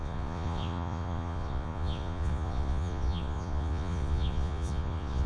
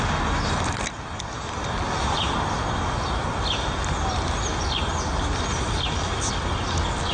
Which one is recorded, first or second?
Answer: second